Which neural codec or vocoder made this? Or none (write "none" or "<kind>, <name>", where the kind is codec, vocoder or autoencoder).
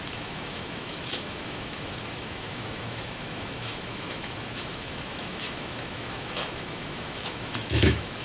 autoencoder, DAC-VAE